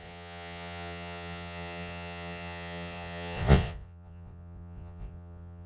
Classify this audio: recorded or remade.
remade